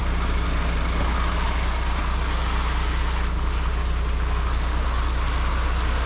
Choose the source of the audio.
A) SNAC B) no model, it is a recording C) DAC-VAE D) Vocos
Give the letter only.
B